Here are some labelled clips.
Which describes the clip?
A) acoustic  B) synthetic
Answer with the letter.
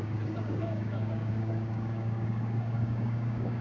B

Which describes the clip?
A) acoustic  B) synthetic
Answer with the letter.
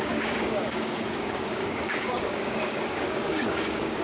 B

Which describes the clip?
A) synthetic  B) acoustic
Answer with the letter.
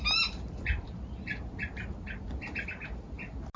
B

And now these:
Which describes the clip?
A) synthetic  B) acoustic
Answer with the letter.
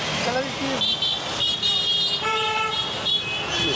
B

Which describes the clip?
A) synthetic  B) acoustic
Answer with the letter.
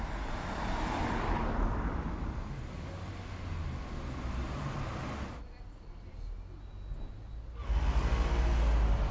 B